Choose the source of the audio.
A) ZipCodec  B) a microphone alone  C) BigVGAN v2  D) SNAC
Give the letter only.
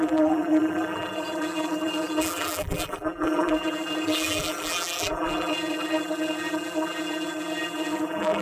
C